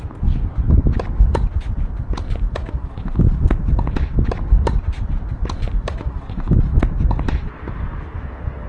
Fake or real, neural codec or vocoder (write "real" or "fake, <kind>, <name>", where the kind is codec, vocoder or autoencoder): real